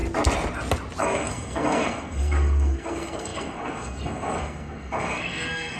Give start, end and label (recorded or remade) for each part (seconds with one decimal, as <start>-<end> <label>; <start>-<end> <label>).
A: 0.0-1.0 recorded; 1.0-5.8 remade